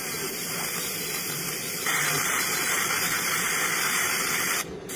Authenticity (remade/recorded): remade